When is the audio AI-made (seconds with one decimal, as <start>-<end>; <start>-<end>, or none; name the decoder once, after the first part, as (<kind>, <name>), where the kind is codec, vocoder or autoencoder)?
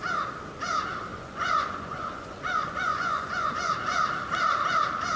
1.1-3.7 (vocoder, Vocos)